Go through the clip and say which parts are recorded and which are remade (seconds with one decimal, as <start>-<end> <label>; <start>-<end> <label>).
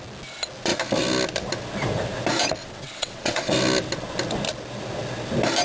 0.0-2.6 recorded; 2.6-3.5 remade; 3.5-5.6 recorded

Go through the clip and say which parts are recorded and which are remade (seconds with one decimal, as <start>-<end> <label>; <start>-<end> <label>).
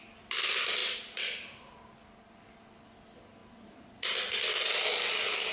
0.0-3.4 recorded; 3.4-4.2 remade; 4.2-5.5 recorded